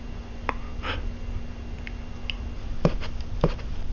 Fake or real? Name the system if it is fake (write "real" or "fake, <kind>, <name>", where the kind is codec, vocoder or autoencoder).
real